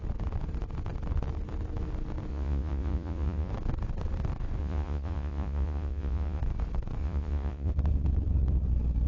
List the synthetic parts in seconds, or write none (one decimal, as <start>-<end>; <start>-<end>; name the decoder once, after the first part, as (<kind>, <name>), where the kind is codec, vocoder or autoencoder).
2.3-3.5 (vocoder, Vocos); 4.6-6.4; 7.0-7.7